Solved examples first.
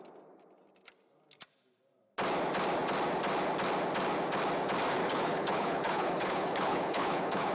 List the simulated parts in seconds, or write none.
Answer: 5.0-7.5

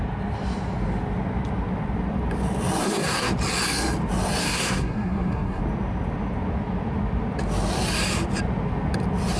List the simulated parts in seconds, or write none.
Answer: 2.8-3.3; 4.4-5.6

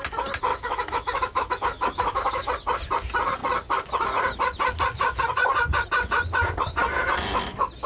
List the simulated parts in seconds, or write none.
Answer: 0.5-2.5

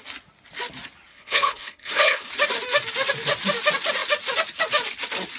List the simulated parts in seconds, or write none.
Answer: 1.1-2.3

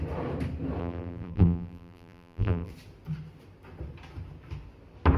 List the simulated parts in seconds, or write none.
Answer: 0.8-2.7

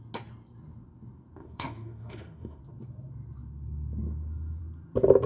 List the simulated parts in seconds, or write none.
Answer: 1.4-2.6

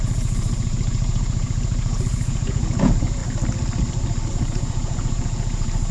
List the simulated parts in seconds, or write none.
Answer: 0.0-3.2; 4.3-5.9